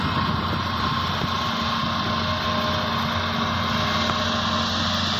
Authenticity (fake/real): real